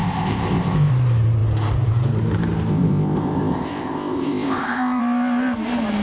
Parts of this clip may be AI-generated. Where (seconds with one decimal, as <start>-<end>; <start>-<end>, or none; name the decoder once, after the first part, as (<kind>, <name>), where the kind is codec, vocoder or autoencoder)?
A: 0.0-0.9 (codec, ZipCodec); 2.7-5.0